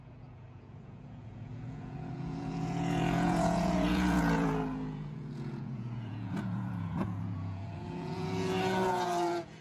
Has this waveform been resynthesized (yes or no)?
yes